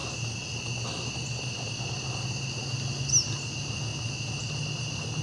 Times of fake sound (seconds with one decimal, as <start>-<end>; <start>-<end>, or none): none

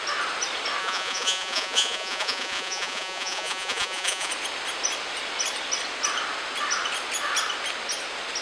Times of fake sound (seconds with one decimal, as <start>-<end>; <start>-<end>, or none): 0.8-4.3

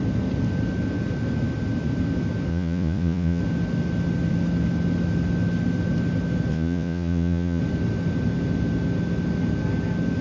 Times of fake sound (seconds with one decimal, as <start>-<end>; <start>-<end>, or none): 2.5-3.4; 6.5-7.6

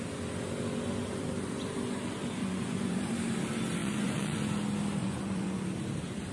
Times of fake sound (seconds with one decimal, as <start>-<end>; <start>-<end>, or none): 2.4-3.1; 3.8-4.4; 5.0-5.6

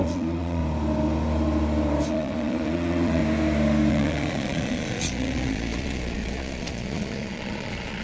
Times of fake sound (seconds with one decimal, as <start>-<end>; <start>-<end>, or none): 0.0-0.6; 2.1-3.2; 3.9-8.0

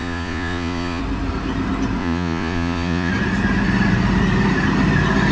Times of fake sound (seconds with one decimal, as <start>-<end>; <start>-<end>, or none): 0.0-1.0; 2.0-3.1

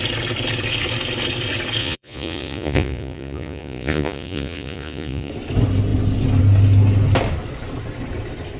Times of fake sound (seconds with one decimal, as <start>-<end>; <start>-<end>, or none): 1.8-5.3

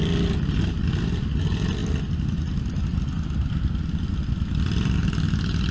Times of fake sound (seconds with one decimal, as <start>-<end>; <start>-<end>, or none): none